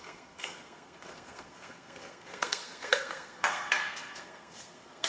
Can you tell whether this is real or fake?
fake